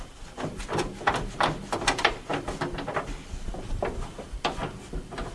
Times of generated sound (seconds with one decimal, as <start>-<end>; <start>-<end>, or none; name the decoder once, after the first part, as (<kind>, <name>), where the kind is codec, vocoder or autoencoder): none